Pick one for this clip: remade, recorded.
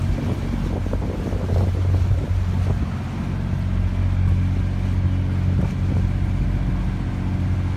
recorded